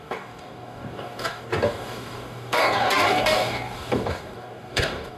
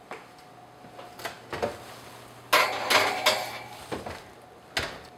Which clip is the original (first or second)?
second